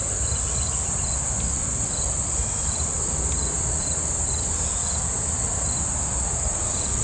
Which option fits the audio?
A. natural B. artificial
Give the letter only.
A